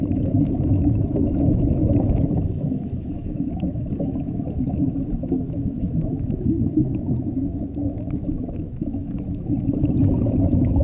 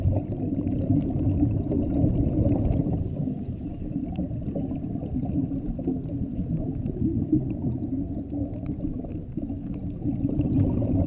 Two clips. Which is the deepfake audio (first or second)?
first